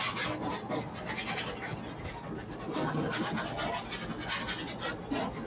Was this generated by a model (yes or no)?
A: no